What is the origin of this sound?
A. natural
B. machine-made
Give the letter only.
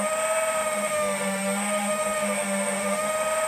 B